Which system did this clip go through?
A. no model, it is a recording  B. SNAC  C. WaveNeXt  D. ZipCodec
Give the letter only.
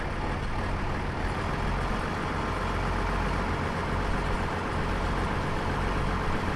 A